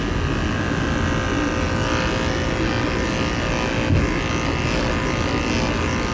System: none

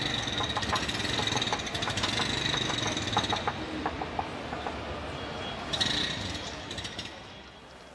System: none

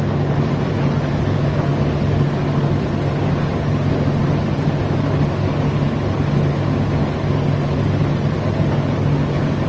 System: none